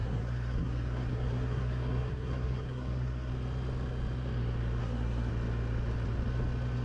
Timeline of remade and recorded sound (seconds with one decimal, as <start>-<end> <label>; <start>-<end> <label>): 0.0-3.3 remade; 3.3-4.8 recorded; 4.8-5.3 remade; 5.3-6.8 recorded